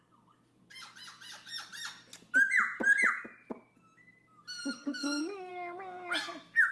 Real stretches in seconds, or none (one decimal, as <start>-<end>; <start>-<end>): 0.0-4.8; 5.5-6.7